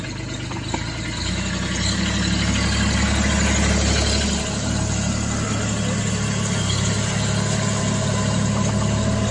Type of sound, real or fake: real